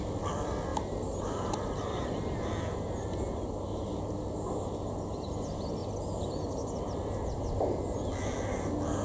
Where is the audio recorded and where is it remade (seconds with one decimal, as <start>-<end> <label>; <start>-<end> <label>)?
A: 0.0-9.0 recorded